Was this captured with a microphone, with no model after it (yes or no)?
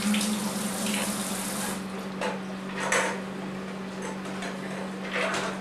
yes